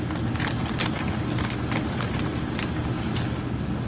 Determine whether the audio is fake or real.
real